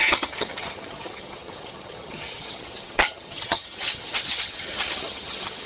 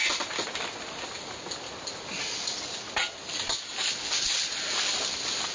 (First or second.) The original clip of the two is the second